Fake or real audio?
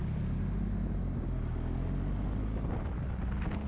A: real